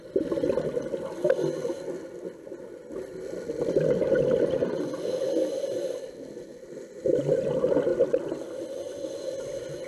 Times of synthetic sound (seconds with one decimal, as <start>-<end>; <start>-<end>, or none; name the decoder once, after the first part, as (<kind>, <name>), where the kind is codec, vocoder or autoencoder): none